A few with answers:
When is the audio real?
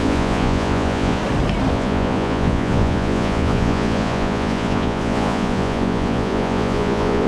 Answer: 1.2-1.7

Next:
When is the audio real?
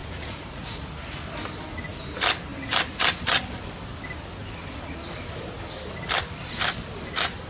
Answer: 0.9-7.5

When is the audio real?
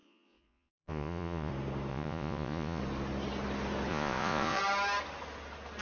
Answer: 1.5-1.9; 2.8-3.9; 4.6-5.8